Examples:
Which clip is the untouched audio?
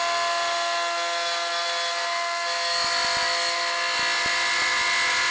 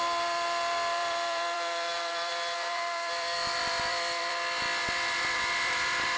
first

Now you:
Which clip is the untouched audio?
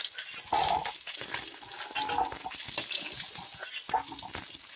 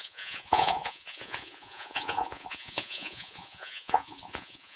first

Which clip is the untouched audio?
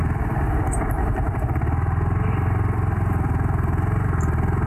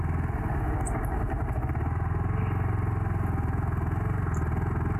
second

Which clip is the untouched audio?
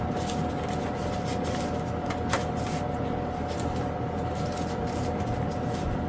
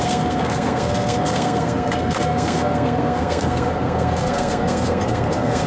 first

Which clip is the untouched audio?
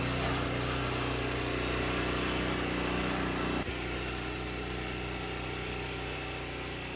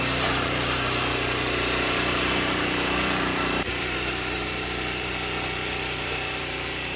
first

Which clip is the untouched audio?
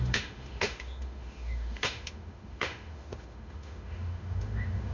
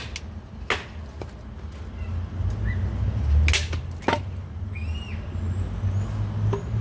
second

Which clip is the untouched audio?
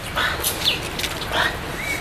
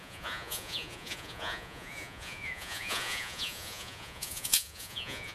first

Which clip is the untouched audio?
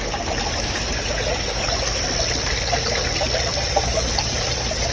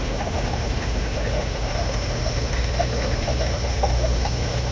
first